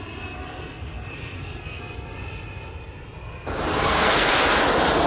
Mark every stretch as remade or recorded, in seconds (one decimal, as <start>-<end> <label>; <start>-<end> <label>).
0.0-0.5 recorded; 0.5-1.8 remade; 1.8-3.7 recorded; 3.7-4.3 remade; 4.3-5.1 recorded